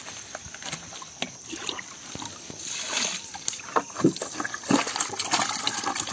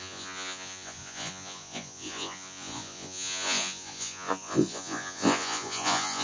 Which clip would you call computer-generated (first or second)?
second